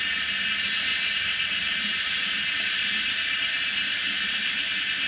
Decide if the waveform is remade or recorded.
recorded